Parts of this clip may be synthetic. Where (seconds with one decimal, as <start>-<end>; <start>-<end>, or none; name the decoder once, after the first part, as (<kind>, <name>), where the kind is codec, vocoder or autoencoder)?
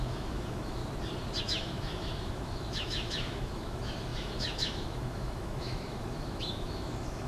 0.0-0.8 (autoencoder, DAC-VAE); 1.4-7.3